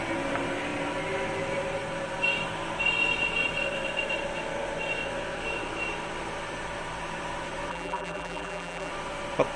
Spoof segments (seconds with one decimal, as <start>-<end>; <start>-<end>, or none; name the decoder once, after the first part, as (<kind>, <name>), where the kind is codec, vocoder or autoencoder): 7.7-8.9 (vocoder, BigVGAN v2)